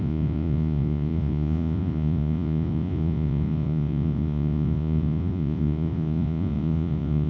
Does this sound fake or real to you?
fake